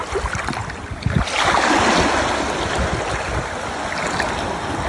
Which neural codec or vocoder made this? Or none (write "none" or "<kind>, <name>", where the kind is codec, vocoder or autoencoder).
none